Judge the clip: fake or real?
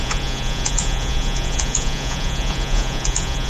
fake